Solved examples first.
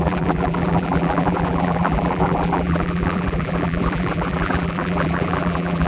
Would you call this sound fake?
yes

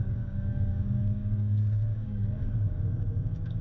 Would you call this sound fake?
yes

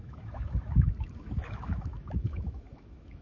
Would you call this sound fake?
yes